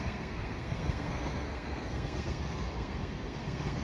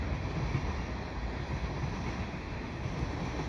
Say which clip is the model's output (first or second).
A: first